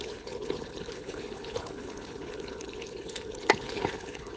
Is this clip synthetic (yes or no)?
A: yes